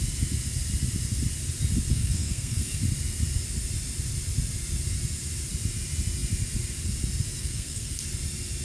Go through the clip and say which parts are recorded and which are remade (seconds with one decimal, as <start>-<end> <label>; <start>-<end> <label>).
0.0-1.9 recorded; 1.9-2.8 remade; 2.8-7.4 recorded; 7.4-8.0 remade; 8.0-8.6 recorded

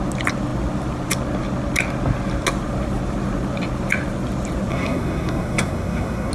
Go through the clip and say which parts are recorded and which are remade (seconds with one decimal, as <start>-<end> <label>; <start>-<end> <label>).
0.0-4.7 recorded; 4.7-6.3 remade

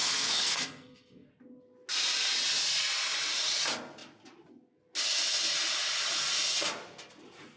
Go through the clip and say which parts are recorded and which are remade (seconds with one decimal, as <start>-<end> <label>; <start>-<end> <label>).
0.0-1.3 remade; 1.3-7.6 recorded

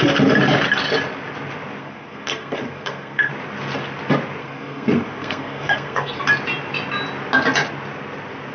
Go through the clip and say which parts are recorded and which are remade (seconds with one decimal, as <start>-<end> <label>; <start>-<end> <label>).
0.0-1.8 recorded; 1.8-3.3 remade; 3.3-4.4 recorded; 4.4-6.2 remade; 6.2-8.5 recorded

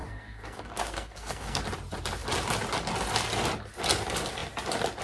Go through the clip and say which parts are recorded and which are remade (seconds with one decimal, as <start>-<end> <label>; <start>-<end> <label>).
0.0-1.6 remade; 1.6-5.0 recorded

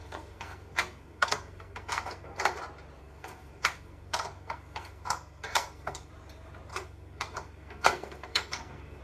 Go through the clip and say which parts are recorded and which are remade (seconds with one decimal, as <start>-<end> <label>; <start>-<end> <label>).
0.0-2.6 remade; 2.6-3.0 recorded; 3.0-6.1 remade; 6.1-6.7 recorded; 6.7-9.0 remade

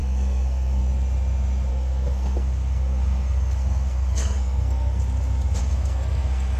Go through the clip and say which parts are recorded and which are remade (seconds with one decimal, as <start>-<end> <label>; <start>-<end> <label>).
0.0-0.8 remade; 0.8-1.7 recorded; 1.7-5.0 remade; 5.0-5.6 recorded; 5.6-6.6 remade